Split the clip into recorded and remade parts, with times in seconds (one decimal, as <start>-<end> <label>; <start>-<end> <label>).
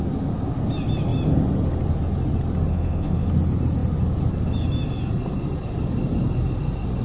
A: 0.0-2.7 recorded; 2.7-3.3 remade; 3.3-7.0 recorded